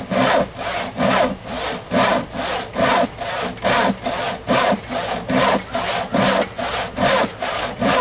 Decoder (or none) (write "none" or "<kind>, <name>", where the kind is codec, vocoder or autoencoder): none